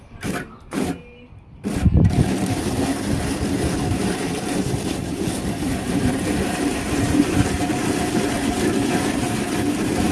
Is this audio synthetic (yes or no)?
yes